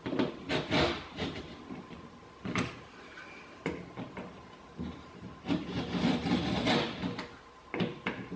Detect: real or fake real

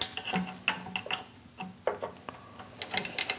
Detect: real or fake real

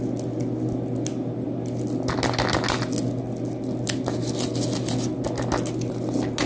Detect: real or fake real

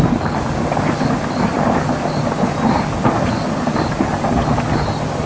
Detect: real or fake real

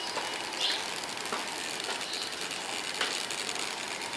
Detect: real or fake real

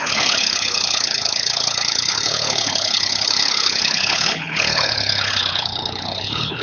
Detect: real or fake fake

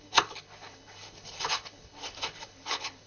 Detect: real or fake fake